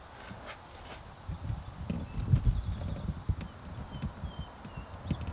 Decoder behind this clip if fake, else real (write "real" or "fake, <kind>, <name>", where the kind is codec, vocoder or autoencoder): real